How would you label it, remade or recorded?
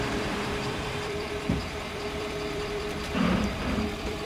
remade